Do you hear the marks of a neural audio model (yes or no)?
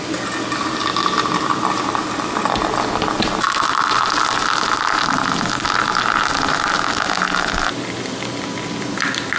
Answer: no